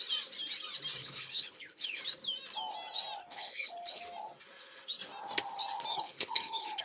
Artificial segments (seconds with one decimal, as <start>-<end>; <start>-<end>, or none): 1.0-2.0; 3.2-4.0; 5.9-6.8